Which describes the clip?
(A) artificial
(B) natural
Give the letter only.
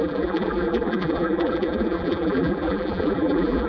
A